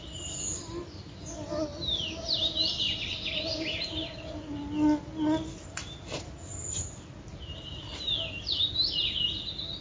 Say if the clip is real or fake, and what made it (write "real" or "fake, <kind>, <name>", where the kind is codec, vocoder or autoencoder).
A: real